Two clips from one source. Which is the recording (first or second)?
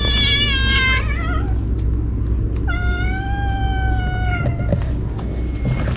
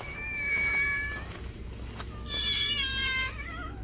first